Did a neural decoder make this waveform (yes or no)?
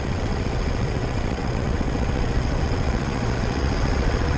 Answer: yes